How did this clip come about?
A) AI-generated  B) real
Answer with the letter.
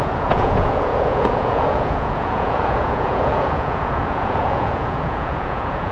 A